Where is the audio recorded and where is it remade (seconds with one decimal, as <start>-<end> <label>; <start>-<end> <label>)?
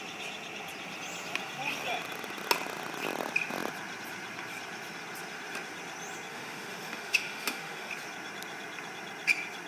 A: 0.0-6.3 recorded; 6.3-7.9 remade; 7.9-9.7 recorded